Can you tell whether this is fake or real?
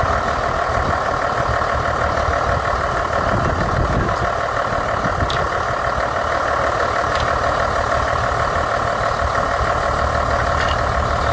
real